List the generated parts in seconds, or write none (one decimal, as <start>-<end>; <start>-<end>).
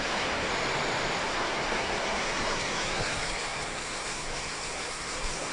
0.0-0.5; 1.2-5.5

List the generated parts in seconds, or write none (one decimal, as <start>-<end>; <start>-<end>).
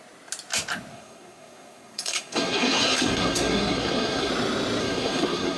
0.9-4.3; 4.8-5.6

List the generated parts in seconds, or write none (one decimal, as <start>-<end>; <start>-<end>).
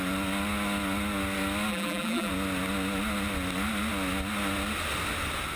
1.7-2.3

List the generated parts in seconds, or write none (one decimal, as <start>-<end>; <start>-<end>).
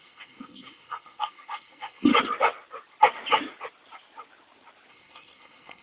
0.0-2.1; 4.9-5.8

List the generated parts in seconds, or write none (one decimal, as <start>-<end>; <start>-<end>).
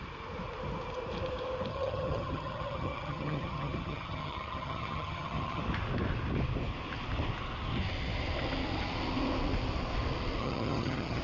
1.7-5.6; 10.4-11.2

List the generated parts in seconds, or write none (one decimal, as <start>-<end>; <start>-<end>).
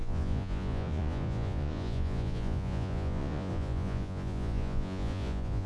0.0-5.7